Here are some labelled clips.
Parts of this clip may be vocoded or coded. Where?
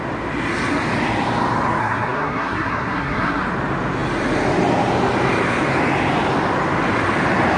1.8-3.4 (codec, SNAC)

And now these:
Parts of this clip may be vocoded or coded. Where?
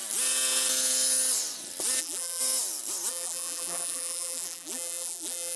2.0-2.4 (vocoder, BigVGAN v2); 3.1-5.6